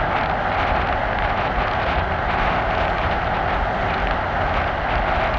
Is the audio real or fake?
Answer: real